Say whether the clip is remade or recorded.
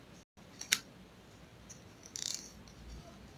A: recorded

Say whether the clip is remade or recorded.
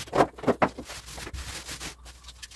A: recorded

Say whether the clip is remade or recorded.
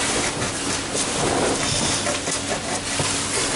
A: recorded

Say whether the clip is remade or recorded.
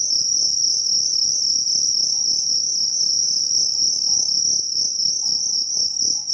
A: recorded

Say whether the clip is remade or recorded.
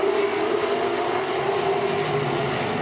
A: recorded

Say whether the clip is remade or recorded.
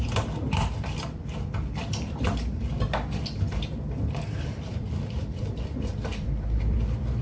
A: remade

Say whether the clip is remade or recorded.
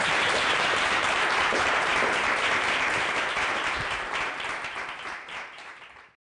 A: remade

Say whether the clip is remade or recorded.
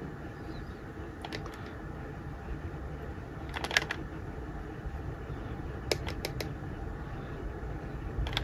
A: recorded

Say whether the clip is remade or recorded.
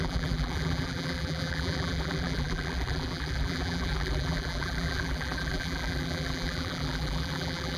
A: remade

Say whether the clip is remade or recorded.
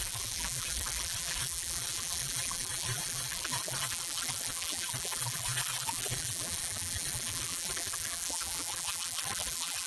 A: remade